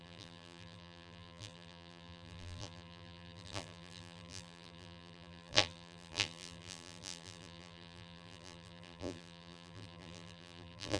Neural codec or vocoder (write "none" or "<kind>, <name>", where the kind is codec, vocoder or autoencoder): vocoder, BigVGAN v2